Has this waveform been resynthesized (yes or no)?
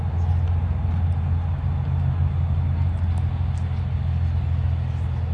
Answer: no